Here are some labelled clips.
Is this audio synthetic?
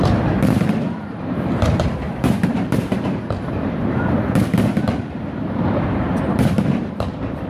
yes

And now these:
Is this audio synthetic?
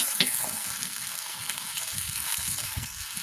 yes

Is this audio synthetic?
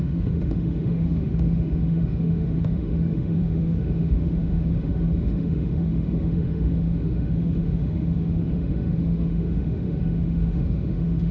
yes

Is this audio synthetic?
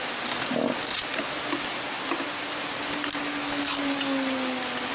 no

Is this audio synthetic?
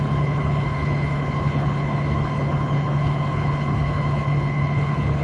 yes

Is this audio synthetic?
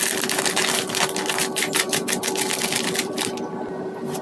no